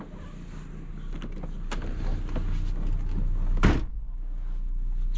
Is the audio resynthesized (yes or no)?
no